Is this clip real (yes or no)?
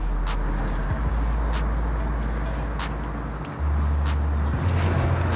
yes